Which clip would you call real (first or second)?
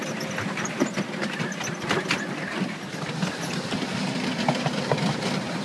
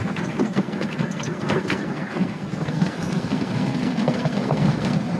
first